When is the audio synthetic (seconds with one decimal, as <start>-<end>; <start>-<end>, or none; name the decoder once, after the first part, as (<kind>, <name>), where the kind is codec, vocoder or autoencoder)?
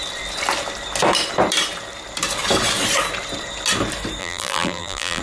4.2-5.2 (vocoder, BigVGAN v2)